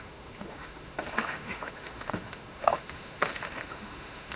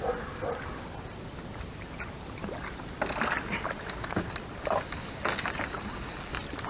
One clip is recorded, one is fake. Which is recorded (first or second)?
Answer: second